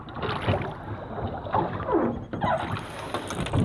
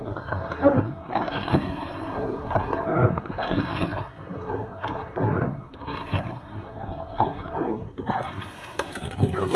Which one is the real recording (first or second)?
first